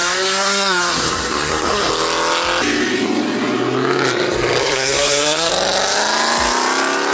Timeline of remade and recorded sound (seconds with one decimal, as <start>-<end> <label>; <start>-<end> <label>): 0.0-1.9 remade; 1.9-4.6 recorded; 4.6-5.5 remade; 5.5-7.1 recorded